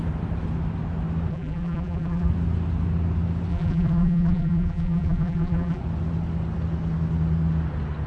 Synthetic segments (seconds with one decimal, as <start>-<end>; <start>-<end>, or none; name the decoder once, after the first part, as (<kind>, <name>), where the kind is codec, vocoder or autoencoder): 1.3-2.3 (vocoder, BigVGAN v2); 3.5-5.8